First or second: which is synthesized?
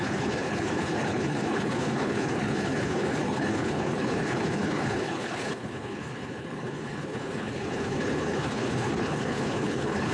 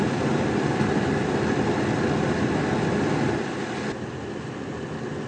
first